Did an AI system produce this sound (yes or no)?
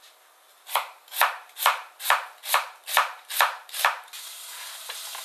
no